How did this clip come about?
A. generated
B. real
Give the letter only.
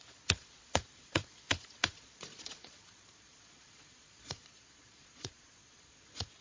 A